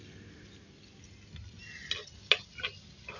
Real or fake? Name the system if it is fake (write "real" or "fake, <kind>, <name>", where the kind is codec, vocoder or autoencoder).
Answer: real